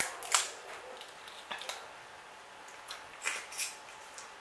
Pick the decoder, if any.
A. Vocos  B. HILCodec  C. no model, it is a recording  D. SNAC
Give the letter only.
C